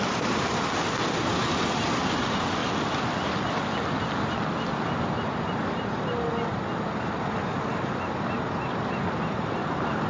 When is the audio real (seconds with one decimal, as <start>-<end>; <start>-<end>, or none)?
0.0-9.6